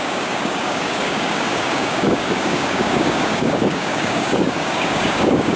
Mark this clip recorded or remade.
remade